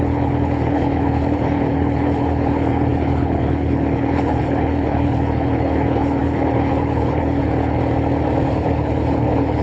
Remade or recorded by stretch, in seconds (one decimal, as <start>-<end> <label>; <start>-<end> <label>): 0.0-7.8 remade; 7.8-8.5 recorded; 8.5-9.6 remade